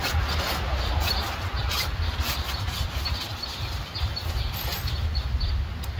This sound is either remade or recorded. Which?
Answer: recorded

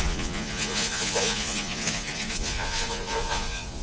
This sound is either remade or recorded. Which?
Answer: remade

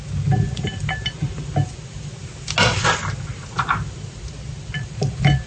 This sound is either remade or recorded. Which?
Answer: recorded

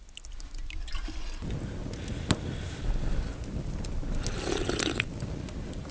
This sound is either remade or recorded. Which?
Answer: recorded